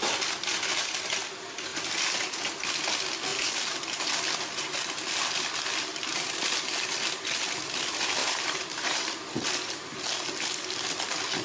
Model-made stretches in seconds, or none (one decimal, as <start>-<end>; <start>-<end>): 3.3-4.0; 8.2-9.2